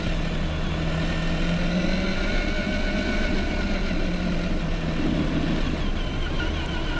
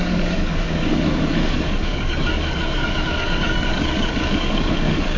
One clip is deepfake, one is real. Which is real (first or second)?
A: first